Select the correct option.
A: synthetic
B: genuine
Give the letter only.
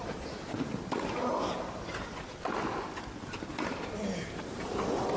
B